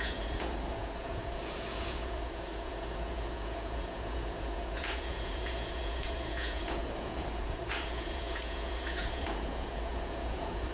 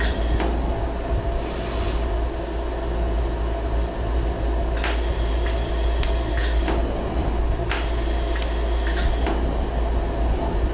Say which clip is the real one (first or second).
second